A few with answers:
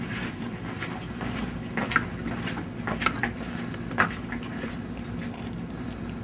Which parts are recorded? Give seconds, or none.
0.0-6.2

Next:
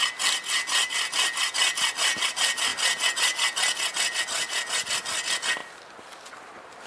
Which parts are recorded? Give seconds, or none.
0.0-6.9